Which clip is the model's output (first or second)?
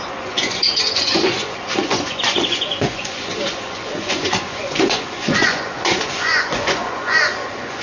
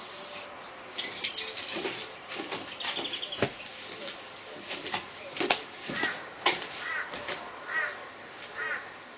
first